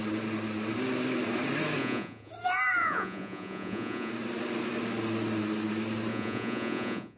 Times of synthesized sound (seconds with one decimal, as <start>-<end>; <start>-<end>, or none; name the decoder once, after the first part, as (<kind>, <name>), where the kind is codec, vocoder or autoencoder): 1.8-2.3 (vocoder, Vocos); 2.8-4.1; 6.1-7.2

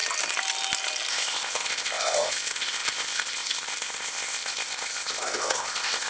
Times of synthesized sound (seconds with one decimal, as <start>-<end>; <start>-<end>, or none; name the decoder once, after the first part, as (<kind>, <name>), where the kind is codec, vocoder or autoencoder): 1.1-6.1 (codec, ZipCodec)

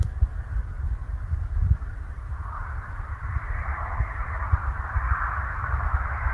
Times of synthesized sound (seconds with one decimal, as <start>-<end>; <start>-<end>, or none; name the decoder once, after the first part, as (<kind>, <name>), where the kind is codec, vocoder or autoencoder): 0.0-3.7 (vocoder, BigVGAN v2)

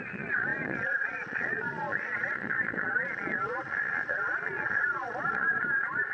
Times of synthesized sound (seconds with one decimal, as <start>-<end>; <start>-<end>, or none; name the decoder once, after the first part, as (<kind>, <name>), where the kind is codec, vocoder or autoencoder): 0.0-6.1 (vocoder, Vocos)